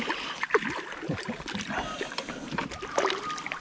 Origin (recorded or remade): recorded